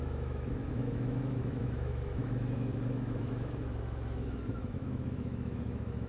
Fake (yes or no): yes